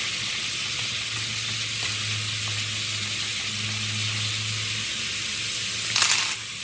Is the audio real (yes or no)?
yes